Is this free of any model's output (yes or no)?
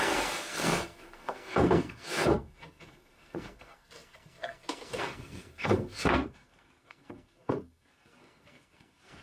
no